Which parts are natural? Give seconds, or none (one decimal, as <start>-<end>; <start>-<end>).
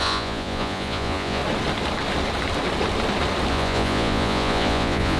1.4-3.5